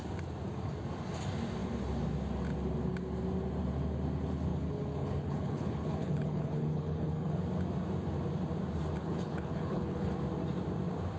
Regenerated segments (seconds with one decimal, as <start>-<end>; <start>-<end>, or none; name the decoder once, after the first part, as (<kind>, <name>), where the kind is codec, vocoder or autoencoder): 4.5-7.4 (codec, HILCodec); 9.0-10.1